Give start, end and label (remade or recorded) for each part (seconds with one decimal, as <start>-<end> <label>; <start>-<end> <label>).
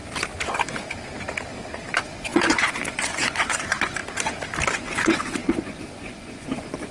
0.0-1.9 recorded; 1.9-4.0 remade; 4.0-4.7 recorded; 4.7-6.9 remade